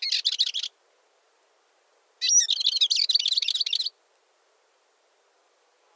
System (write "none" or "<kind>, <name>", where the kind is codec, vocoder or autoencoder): none